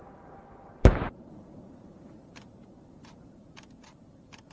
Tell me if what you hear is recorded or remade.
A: remade